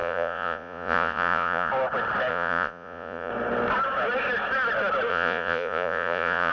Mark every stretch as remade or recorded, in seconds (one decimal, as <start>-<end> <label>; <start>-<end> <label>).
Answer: 0.0-1.7 remade; 1.7-2.3 recorded; 2.3-3.3 remade; 3.3-5.1 recorded; 5.1-6.5 remade